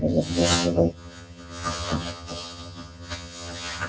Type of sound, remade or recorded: remade